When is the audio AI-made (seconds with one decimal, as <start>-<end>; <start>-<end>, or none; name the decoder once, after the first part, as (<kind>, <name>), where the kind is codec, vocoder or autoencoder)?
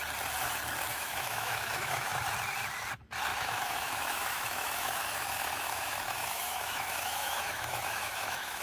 0.9-2.2 (autoencoder, DAC-VAE); 3.3-8.6